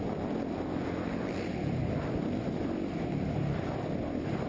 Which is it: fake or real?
real